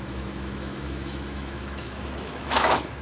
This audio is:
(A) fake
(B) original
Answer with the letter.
A